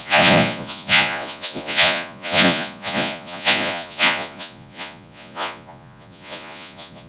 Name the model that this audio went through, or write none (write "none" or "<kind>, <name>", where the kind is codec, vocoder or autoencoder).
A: vocoder, Vocos